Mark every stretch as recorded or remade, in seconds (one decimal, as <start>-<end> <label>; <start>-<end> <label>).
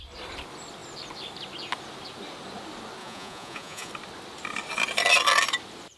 0.0-3.0 recorded; 3.0-3.9 remade; 3.9-6.0 recorded